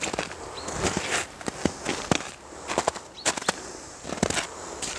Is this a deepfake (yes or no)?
no